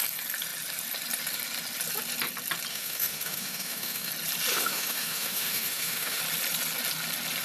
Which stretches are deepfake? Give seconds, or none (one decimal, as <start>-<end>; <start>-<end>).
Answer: 2.7-4.1; 4.5-6.2